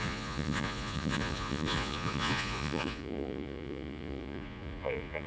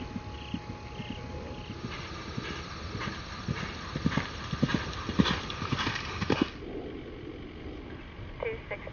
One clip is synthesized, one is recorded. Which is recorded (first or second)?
second